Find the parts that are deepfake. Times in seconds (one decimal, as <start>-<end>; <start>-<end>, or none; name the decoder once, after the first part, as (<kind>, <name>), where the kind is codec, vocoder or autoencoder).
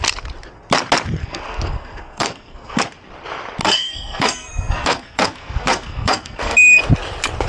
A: 1.2-2.8 (codec, SNAC); 3.6-6.8